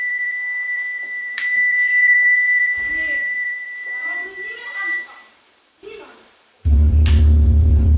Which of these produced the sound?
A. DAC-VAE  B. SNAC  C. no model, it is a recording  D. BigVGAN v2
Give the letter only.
D